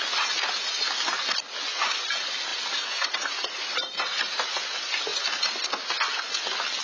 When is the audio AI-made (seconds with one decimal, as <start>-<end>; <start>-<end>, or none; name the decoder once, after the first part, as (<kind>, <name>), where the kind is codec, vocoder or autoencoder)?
2.5-4.5 (vocoder, BigVGAN v2)